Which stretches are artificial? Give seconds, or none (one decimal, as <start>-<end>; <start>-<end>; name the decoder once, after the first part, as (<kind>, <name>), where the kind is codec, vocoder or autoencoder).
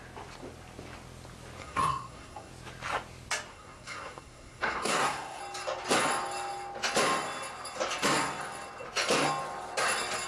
1.6-2.5 (codec, SNAC); 3.5-5.4